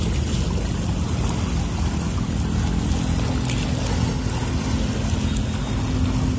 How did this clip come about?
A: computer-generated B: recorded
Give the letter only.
B